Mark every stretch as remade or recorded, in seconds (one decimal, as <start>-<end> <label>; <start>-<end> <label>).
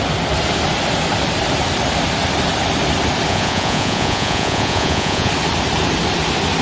0.0-3.3 recorded; 3.3-5.3 remade; 5.3-6.6 recorded